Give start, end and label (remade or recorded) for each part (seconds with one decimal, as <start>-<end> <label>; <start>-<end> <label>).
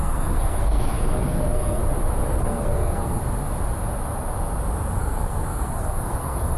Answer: 0.0-1.8 remade; 1.8-2.4 recorded; 2.4-3.2 remade; 3.2-5.0 recorded; 5.0-6.6 remade